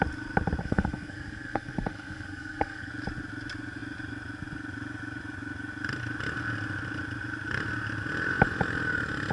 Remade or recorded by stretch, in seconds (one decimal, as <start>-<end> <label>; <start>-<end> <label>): 0.0-0.6 recorded; 0.6-2.9 remade; 2.9-9.3 recorded